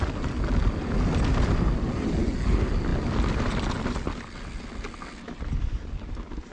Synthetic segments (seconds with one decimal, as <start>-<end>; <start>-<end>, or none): none